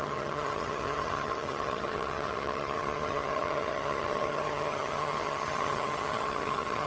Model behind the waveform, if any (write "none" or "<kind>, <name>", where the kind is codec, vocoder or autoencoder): vocoder, HiFi-GAN